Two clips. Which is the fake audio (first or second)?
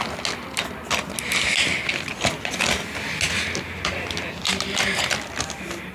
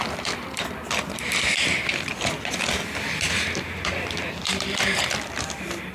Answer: second